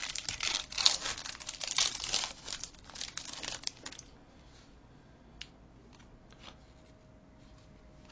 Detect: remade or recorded recorded